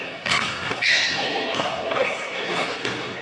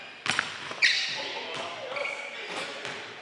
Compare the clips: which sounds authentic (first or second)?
second